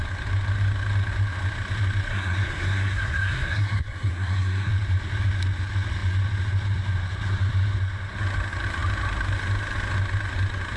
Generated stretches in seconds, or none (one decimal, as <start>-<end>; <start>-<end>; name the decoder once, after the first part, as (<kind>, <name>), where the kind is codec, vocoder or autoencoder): 2.1-4.7 (codec, SNAC)

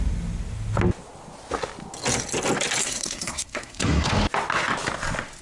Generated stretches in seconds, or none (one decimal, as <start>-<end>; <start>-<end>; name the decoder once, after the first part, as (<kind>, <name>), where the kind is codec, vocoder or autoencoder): 2.8-4.1 (codec, SNAC)